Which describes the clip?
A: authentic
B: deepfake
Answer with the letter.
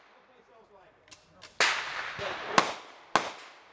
A